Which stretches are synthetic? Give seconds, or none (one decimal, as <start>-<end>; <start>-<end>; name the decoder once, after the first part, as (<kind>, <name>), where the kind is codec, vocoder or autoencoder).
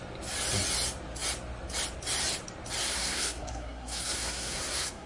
2.8-5.1 (codec, SNAC)